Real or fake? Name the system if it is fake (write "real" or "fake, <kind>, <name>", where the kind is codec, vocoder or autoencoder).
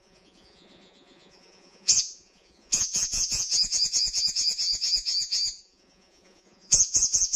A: fake, vocoder, Vocos